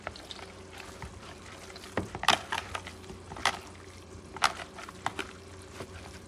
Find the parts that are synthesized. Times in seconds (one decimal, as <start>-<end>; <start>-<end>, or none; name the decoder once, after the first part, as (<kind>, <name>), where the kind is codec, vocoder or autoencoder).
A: none